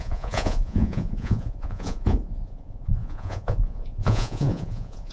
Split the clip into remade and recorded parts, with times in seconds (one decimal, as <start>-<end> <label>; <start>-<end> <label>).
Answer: 0.0-5.1 remade